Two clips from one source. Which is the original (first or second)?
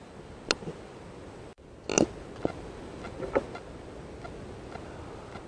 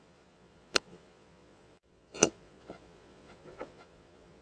first